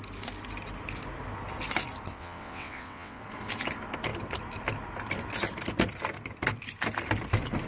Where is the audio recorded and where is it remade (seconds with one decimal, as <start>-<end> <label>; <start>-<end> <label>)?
0.0-2.1 recorded; 2.1-3.2 remade; 3.2-7.7 recorded

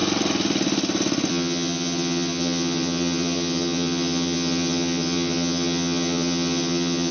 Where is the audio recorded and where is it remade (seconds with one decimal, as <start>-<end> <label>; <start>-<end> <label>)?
0.0-1.3 recorded; 1.3-7.1 remade

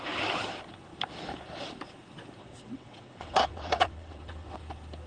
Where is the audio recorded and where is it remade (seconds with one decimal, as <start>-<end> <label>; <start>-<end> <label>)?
0.0-2.4 recorded; 2.4-4.6 remade; 4.6-5.1 recorded

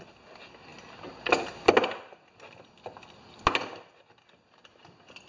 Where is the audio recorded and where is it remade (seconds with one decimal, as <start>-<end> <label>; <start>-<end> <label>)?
0.0-5.3 recorded

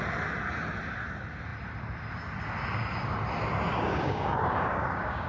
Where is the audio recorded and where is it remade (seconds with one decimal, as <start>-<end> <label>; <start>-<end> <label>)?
0.0-3.7 recorded; 3.7-5.3 remade

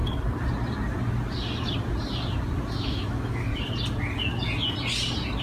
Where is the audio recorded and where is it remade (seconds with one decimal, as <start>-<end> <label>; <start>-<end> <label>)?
0.0-2.9 recorded; 2.9-3.5 remade; 3.5-5.4 recorded